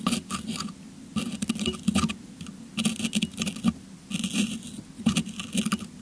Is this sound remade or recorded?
recorded